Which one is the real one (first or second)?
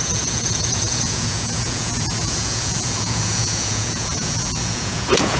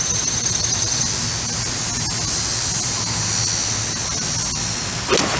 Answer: second